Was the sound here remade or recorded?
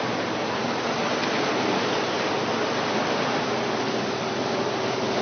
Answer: recorded